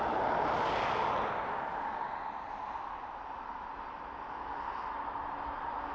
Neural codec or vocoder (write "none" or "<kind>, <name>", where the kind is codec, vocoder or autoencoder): none